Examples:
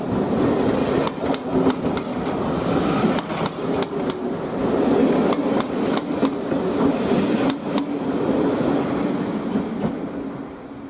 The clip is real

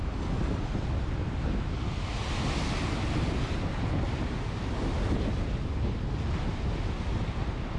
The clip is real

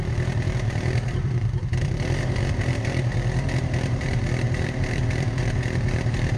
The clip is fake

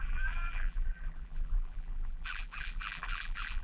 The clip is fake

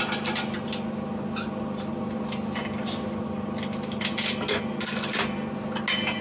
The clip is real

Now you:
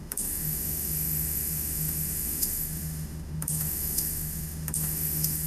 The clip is fake